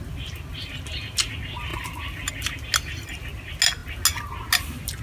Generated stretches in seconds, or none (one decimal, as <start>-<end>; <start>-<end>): none